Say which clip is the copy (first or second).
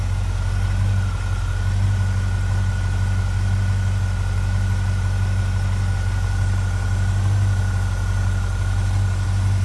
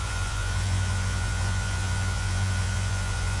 second